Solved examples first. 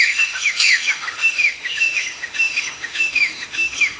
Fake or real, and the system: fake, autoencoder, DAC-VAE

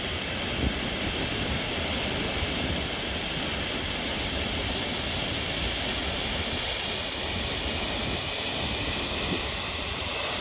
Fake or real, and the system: real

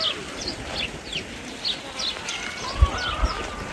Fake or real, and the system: real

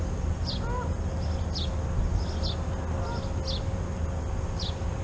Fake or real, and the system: real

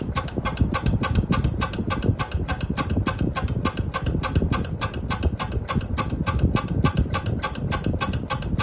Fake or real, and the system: real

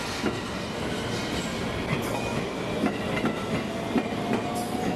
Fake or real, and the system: real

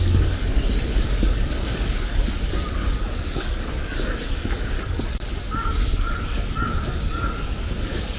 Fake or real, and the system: fake, codec, DAC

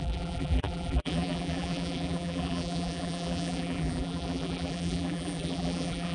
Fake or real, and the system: fake, vocoder, BigVGAN v2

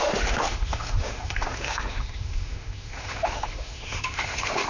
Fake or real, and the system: fake, autoencoder, DAC-VAE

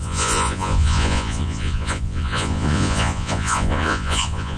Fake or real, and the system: fake, vocoder, Vocos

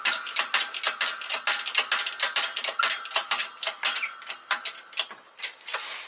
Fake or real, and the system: real